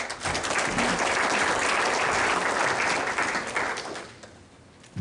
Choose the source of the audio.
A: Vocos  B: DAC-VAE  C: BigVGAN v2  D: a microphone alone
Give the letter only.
D